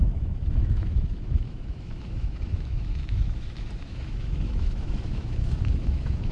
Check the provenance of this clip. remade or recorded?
remade